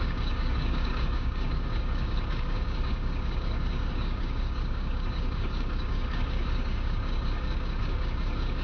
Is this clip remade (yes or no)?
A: yes